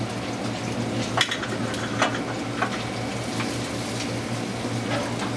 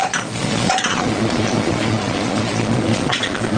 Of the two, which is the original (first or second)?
first